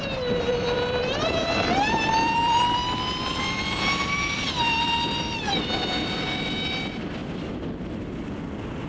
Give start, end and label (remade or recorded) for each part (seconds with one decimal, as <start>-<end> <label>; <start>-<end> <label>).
0.0-7.2 remade; 7.2-7.7 recorded; 7.7-8.9 remade